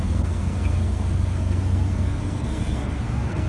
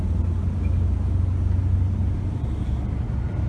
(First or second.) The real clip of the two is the second